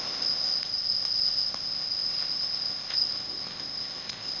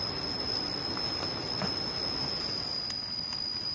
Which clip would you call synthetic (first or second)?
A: first